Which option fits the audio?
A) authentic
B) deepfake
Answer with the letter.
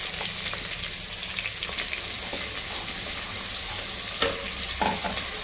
A